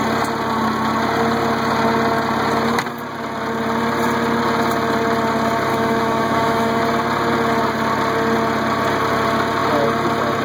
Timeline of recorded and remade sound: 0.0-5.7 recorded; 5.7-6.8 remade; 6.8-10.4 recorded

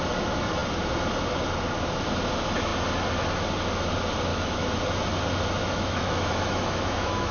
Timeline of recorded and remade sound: 0.0-4.3 recorded; 4.3-4.8 remade; 4.8-5.6 recorded; 5.6-7.3 remade